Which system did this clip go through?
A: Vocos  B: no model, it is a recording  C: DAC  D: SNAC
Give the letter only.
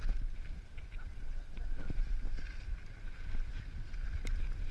B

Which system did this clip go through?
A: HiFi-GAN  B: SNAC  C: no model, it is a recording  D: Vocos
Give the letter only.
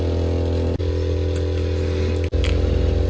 C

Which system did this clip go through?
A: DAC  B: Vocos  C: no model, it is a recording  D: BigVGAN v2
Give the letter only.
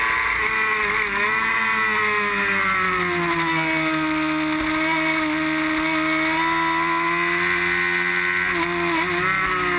C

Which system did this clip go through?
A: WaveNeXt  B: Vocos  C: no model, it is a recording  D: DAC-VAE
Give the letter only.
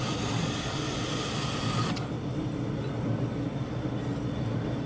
C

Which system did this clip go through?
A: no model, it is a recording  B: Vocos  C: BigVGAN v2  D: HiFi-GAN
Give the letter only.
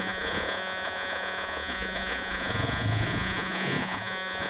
B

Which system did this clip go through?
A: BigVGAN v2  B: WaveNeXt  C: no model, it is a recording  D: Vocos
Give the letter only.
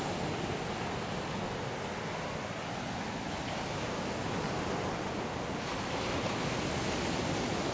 C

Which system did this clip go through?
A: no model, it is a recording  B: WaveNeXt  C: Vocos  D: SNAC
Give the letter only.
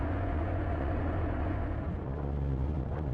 C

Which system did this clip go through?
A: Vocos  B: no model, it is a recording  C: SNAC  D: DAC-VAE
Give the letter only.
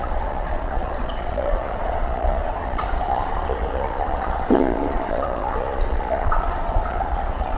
A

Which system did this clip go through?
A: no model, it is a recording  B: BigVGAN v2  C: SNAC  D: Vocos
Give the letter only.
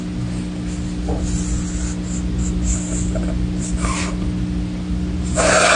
A